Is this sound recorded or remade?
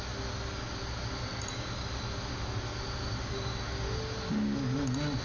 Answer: recorded